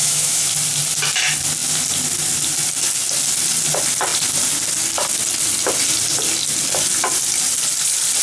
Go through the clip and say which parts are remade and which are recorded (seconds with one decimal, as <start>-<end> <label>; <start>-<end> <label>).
0.0-0.5 remade; 0.5-8.2 recorded